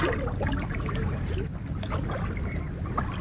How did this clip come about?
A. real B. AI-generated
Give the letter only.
A